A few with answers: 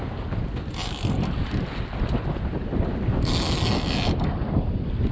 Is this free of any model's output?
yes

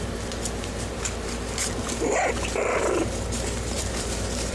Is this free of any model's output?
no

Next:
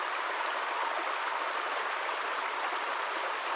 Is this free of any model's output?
yes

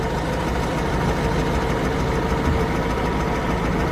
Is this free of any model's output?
yes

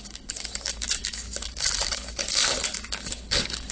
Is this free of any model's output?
no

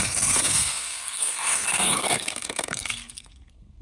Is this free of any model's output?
no